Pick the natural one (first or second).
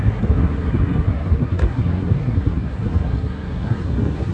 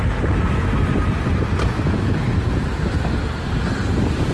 second